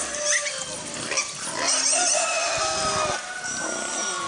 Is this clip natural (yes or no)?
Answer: yes